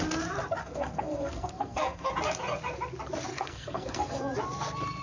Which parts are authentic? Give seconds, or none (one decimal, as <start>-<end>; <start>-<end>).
0.0-0.6; 2.1-3.3; 4.2-5.0